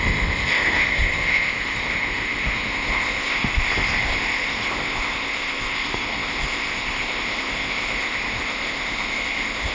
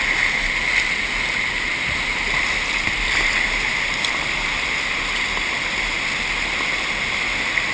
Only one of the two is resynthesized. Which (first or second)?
first